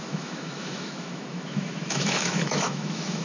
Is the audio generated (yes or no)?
yes